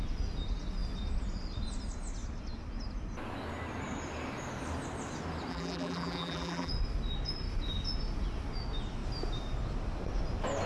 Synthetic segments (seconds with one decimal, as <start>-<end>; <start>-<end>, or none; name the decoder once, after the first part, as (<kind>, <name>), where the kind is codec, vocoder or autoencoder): 5.5-6.7 (vocoder, BigVGAN v2)